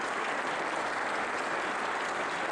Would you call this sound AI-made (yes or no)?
no